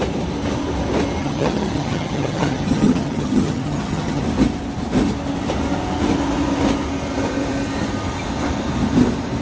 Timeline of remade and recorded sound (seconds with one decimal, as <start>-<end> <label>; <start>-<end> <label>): 0.0-1.2 recorded; 1.2-4.2 remade; 4.2-9.4 recorded